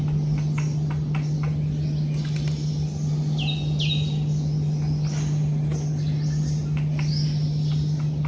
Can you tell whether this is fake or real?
real